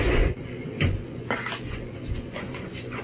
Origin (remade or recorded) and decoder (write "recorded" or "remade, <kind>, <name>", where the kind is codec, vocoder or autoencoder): remade, vocoder, Vocos